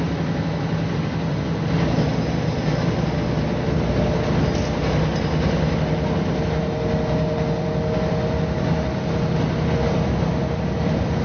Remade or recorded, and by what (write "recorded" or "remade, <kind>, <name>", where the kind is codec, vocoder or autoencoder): recorded